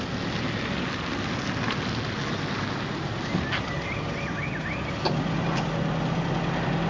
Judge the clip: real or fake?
real